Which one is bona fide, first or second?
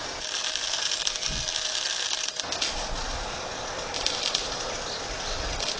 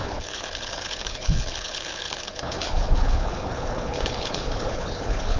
first